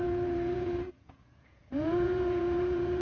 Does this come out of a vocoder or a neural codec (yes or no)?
yes